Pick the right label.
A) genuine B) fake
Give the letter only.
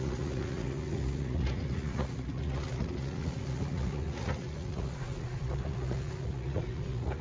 B